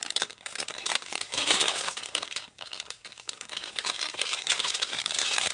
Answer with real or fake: fake